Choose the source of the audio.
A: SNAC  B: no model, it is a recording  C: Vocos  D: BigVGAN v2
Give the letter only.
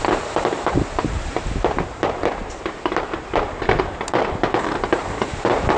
D